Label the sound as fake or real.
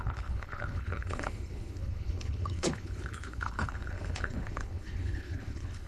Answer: fake